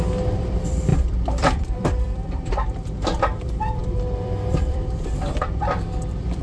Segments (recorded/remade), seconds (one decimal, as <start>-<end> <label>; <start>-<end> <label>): 0.0-6.4 remade

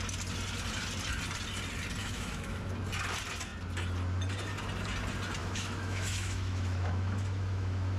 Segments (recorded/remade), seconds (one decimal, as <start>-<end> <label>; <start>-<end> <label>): 0.0-2.0 recorded; 2.0-2.7 remade; 2.7-5.4 recorded; 5.4-8.0 remade